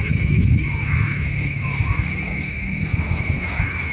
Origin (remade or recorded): remade